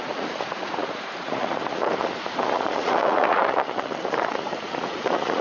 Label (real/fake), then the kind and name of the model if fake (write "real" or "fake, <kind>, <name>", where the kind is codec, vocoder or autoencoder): fake, vocoder, Vocos